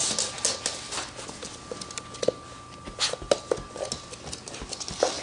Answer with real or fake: real